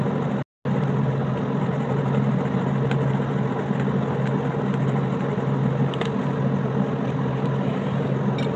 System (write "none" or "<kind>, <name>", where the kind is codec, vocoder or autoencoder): none